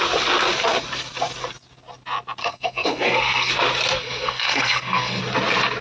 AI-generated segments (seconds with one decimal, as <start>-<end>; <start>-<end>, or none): 2.4-3.5; 4.0-5.2